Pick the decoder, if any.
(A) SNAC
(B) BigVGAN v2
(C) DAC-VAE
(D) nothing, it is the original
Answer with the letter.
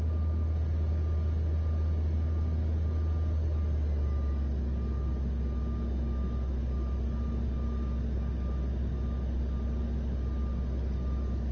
D